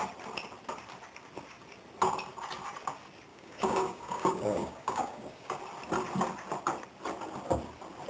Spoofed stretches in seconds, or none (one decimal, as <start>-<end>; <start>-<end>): 3.3-5.6